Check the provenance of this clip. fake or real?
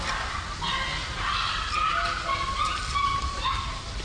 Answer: real